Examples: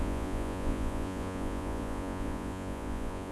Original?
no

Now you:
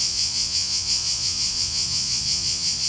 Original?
no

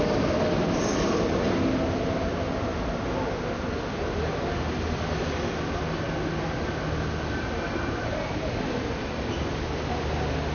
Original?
yes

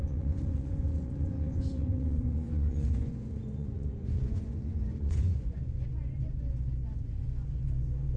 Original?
no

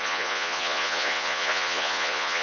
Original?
no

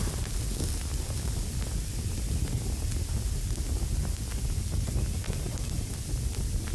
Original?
yes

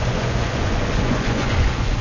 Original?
no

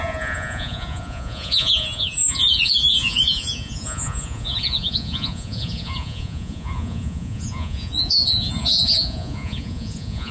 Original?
no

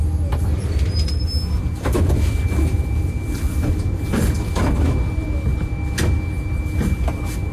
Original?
yes